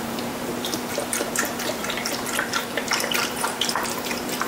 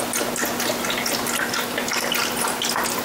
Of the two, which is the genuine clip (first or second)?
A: second